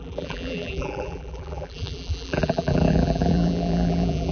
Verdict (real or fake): fake